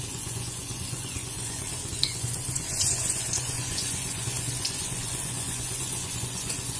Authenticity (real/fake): fake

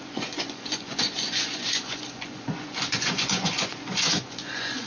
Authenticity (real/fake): fake